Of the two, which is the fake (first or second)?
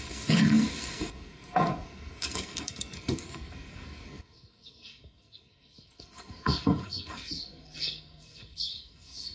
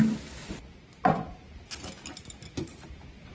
first